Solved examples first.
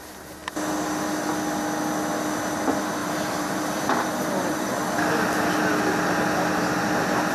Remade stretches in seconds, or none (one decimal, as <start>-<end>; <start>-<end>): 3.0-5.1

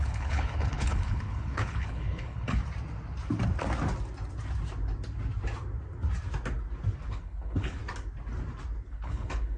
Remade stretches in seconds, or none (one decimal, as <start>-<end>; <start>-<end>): 0.0-2.6; 7.1-7.8; 8.9-9.6

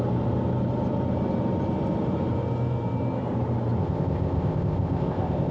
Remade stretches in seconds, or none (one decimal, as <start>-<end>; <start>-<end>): 3.8-5.5

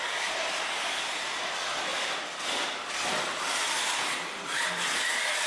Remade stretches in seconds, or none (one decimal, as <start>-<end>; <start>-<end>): none

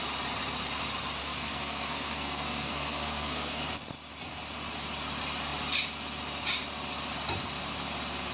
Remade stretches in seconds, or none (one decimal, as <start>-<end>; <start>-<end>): 1.2-3.7

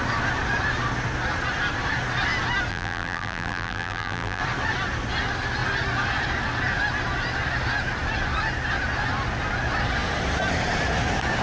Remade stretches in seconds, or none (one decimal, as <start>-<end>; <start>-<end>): 2.7-4.4

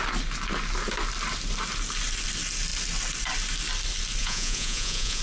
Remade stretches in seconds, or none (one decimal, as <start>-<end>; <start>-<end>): 4.2-5.2